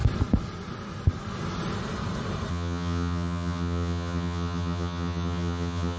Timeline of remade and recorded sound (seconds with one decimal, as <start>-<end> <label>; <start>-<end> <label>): 0.0-2.5 recorded; 2.5-6.0 remade